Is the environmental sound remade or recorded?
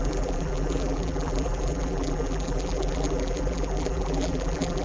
remade